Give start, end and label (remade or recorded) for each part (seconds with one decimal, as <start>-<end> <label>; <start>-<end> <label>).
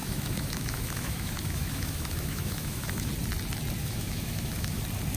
0.0-3.1 remade; 3.1-3.8 recorded; 3.8-4.8 remade; 4.8-5.2 recorded